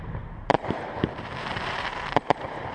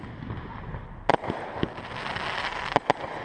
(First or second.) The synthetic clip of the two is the first